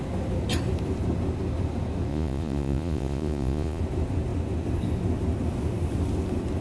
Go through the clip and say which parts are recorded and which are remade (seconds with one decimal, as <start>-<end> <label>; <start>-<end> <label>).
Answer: 0.0-2.1 recorded; 2.1-3.8 remade; 3.8-6.6 recorded